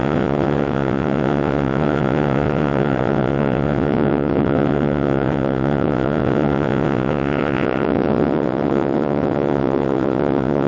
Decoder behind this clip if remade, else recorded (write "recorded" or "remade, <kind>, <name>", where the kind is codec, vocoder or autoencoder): remade, vocoder, WaveNeXt